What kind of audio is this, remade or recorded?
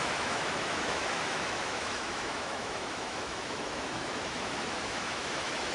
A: remade